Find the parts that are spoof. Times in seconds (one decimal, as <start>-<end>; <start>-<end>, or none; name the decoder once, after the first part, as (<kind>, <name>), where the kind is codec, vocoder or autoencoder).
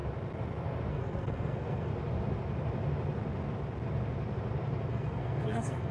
0.9-1.9 (codec, SNAC); 4.9-5.9